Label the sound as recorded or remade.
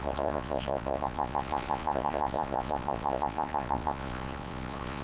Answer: remade